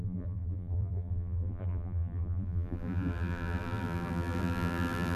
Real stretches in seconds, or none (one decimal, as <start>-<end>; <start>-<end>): none